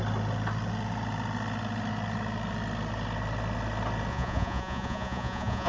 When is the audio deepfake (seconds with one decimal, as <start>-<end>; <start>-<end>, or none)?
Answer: 4.1-5.7